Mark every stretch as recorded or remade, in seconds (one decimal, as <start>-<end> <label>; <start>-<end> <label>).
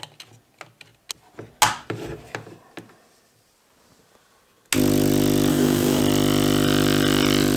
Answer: 0.0-5.5 recorded; 5.5-6.0 remade; 6.0-7.6 recorded